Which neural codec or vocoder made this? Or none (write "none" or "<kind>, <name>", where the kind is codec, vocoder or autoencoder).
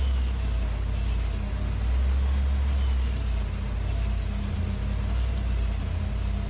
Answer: none